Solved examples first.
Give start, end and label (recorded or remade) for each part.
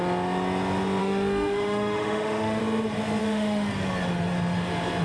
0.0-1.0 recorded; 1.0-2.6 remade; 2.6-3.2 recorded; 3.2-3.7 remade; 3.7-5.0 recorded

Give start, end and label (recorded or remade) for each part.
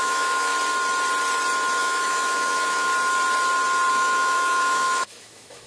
0.0-0.5 remade; 0.5-1.8 recorded; 1.8-2.9 remade; 2.9-3.9 recorded; 3.9-5.7 remade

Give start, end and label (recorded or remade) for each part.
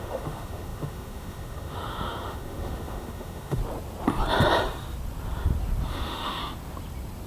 0.0-3.6 remade; 3.6-5.9 recorded; 5.9-6.4 remade; 6.4-7.3 recorded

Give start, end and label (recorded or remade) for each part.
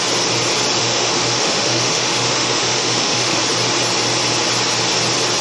0.0-0.8 recorded; 0.8-3.4 remade; 3.4-5.4 recorded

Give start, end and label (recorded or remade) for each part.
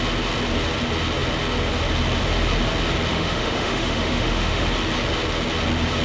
0.0-3.1 recorded; 3.1-4.6 remade; 4.6-6.0 recorded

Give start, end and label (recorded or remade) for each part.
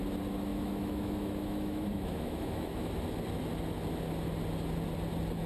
0.0-0.5 recorded; 0.5-2.9 remade; 2.9-5.5 recorded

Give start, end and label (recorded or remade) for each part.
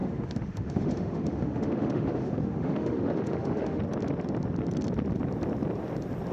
0.0-3.8 remade; 3.8-6.3 recorded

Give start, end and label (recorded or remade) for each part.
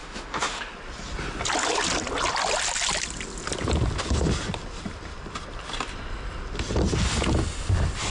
0.0-0.7 remade; 0.7-8.1 recorded